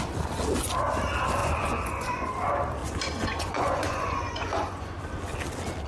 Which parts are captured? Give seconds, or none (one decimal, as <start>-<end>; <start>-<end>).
0.0-1.4; 2.3-2.8; 5.0-5.9